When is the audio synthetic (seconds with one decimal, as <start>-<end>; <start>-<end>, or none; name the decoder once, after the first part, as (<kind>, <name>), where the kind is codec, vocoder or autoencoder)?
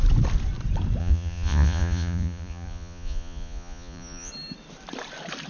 1.0-4.3 (vocoder, Vocos)